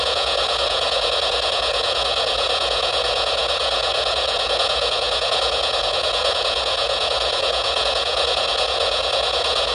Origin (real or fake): fake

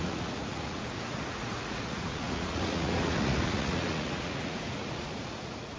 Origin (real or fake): fake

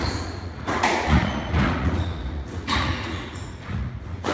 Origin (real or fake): fake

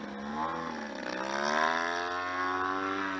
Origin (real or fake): real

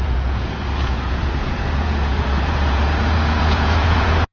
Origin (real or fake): fake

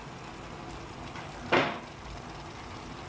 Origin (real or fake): real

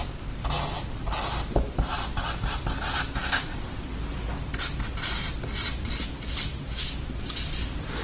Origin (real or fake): real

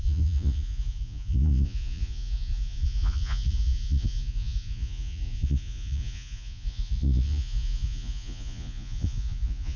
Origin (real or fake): fake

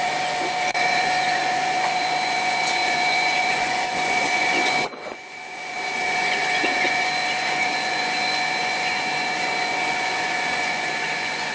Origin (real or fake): fake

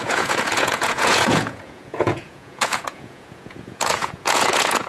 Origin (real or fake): fake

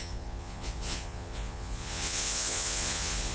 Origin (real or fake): fake